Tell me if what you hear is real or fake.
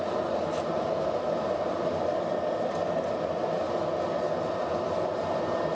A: fake